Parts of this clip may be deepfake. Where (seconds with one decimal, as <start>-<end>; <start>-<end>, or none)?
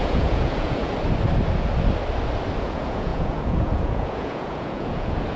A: 0.0-0.8; 2.6-5.4